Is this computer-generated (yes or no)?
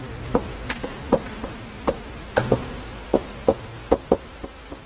no